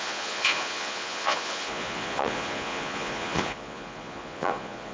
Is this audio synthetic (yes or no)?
yes